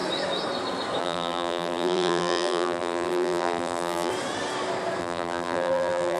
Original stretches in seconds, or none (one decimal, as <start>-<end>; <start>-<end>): 0.0-1.0; 4.1-5.0